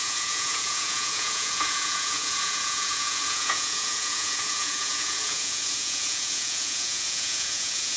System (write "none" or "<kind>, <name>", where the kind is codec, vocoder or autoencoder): vocoder, Vocos